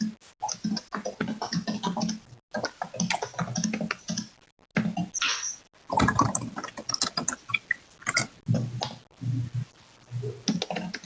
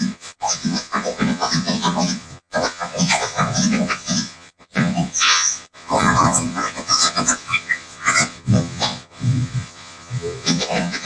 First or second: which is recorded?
first